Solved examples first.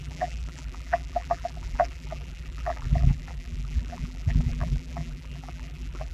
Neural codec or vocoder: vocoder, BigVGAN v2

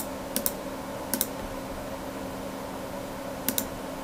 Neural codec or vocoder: none